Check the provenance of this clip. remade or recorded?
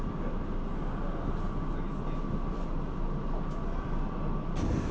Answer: recorded